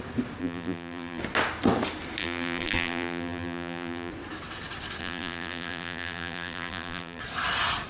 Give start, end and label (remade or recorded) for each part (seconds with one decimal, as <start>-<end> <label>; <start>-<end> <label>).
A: 0.0-0.4 recorded; 0.4-1.2 remade; 1.2-2.2 recorded; 2.2-4.1 remade; 4.1-5.0 recorded; 5.0-7.2 remade; 7.2-7.9 recorded